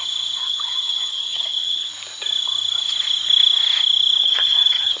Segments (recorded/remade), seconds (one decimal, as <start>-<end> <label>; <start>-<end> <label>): 0.0-0.4 recorded; 0.4-1.9 remade; 1.9-4.2 recorded; 4.2-5.0 remade

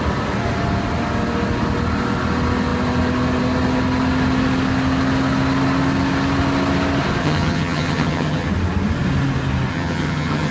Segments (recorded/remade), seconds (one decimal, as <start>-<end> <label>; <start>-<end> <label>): 0.0-7.2 recorded; 7.2-8.5 remade; 8.5-9.7 recorded; 9.7-10.5 remade

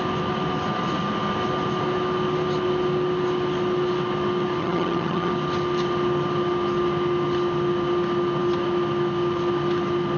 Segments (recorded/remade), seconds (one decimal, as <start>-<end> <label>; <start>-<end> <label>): 0.0-4.6 recorded; 4.6-5.3 remade; 5.3-10.2 recorded

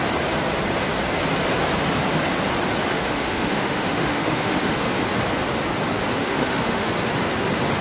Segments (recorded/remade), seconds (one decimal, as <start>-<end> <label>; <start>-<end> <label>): 0.0-2.9 recorded; 2.9-4.9 remade; 4.9-6.2 recorded; 6.2-6.9 remade; 6.9-7.8 recorded

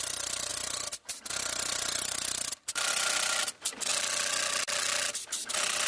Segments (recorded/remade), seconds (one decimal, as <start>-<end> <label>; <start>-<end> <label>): 0.0-5.9 recorded

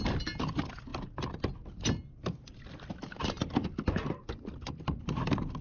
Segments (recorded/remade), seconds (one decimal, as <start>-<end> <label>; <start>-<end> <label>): 0.0-5.6 recorded

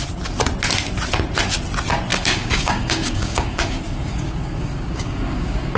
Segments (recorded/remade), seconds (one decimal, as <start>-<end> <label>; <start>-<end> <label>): 0.0-2.1 recorded; 2.1-5.8 remade